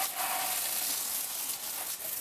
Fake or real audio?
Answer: real